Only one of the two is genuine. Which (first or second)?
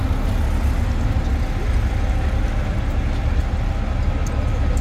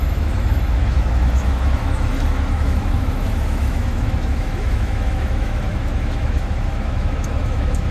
first